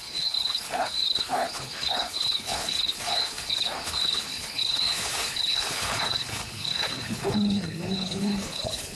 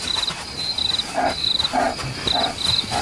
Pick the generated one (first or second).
first